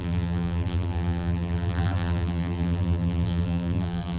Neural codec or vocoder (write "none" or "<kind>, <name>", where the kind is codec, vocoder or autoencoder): vocoder, BigVGAN v2